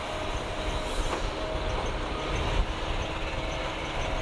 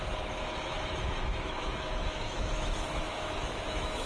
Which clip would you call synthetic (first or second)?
second